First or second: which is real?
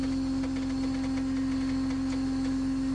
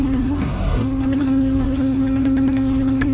first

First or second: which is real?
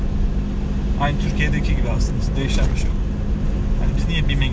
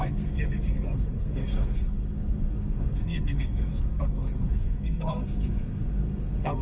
first